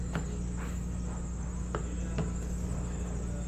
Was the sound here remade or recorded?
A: recorded